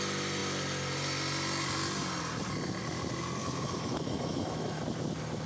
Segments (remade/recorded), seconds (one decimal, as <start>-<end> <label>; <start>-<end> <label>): 0.0-3.4 recorded; 3.4-4.8 remade; 4.8-5.5 recorded